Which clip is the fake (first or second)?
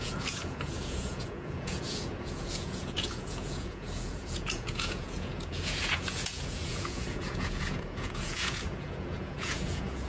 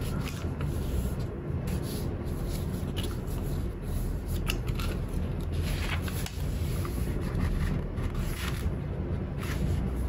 first